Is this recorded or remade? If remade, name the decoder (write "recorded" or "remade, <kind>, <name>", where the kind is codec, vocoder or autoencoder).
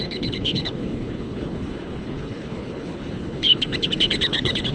remade, codec, HILCodec